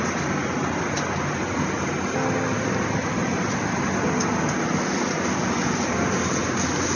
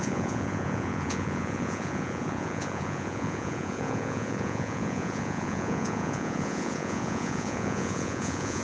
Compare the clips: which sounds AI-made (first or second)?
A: second